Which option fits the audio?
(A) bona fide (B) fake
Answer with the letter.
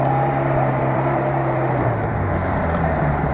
B